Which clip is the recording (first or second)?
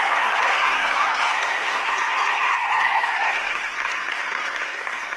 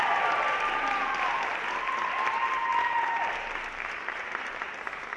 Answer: second